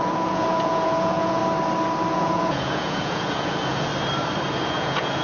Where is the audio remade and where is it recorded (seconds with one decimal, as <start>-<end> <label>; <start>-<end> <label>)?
0.0-1.4 remade; 1.4-2.1 recorded; 2.1-3.9 remade; 3.9-4.5 recorded; 4.5-5.2 remade